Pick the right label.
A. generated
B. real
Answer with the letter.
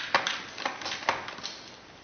B